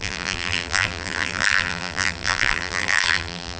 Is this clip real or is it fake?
fake